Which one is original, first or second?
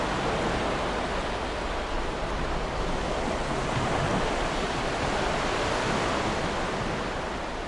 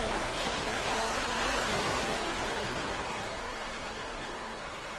first